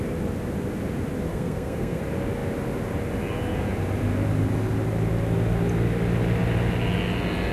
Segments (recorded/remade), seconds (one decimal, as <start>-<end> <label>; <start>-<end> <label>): 0.0-1.3 recorded; 1.3-2.0 remade; 2.0-7.5 recorded